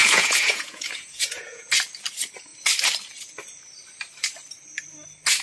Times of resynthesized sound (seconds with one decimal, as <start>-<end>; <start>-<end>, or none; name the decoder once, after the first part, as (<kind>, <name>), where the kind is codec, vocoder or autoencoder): 0.0-1.7 (vocoder, Vocos)